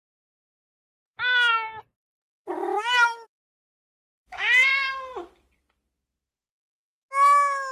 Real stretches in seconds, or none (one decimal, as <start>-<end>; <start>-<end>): 0.0-0.6; 1.5-2.6; 4.7-7.7